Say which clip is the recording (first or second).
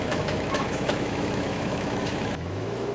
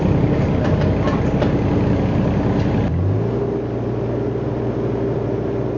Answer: second